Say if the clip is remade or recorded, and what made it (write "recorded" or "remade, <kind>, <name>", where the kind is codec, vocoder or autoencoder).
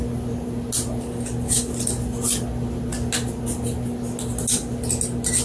recorded